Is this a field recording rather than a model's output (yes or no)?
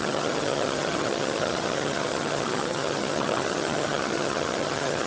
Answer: no